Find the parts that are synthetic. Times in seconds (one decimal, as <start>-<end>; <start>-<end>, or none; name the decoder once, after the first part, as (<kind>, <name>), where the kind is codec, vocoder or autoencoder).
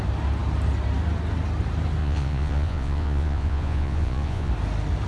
2.0-4.5 (vocoder, Vocos)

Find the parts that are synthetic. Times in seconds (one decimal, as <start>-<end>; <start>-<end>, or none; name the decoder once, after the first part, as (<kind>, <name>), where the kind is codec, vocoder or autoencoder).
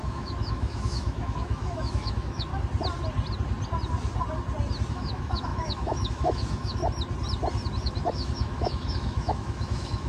0.0-2.5 (autoencoder, DAC-VAE); 4.9-6.8; 7.8-10.1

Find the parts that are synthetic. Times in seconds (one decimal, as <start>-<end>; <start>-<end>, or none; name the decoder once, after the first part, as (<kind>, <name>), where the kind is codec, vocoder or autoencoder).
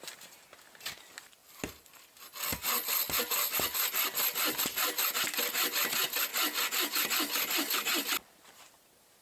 none